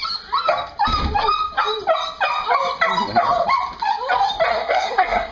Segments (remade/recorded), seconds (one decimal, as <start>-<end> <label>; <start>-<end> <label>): 0.0-4.5 recorded; 4.5-5.3 remade